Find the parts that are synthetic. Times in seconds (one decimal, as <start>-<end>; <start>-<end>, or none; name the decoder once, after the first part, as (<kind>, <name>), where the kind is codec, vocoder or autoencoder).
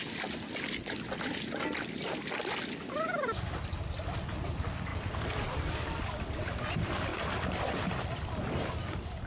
4.9-6.0 (vocoder, BigVGAN v2); 7.1-8.8